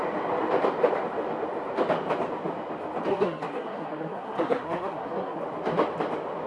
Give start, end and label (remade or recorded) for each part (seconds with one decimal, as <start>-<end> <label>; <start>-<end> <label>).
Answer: 0.0-3.1 recorded; 3.1-5.4 remade; 5.4-6.5 recorded